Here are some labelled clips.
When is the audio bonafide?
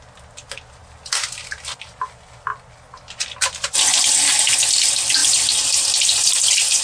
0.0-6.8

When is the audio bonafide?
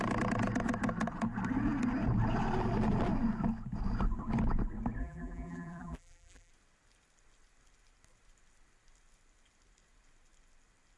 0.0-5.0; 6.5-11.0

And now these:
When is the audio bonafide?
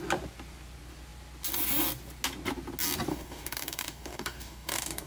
0.0-3.1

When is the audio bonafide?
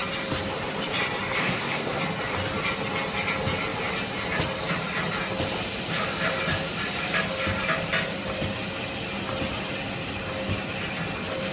0.0-1.4; 2.0-11.5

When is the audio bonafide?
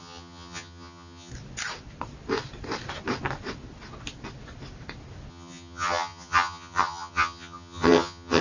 1.3-5.3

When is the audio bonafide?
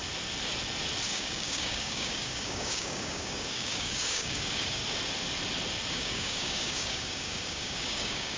0.0-1.1; 4.8-5.9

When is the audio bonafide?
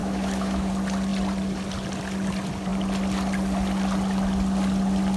0.7-5.2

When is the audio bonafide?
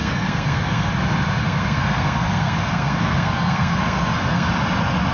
0.9-1.4; 4.5-5.1